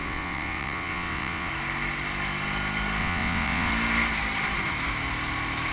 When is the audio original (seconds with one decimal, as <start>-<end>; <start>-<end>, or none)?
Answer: 1.5-3.0; 3.7-5.7